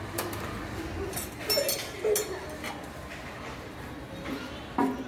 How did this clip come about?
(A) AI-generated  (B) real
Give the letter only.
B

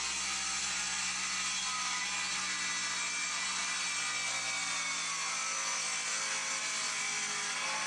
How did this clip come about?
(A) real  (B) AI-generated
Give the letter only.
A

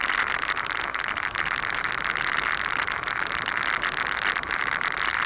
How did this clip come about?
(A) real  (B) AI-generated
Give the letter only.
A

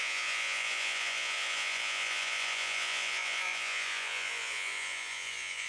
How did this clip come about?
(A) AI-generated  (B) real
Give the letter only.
A